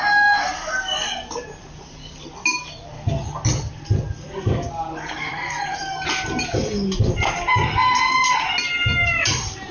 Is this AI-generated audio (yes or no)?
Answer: no